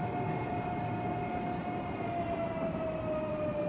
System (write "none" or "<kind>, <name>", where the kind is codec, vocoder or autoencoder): none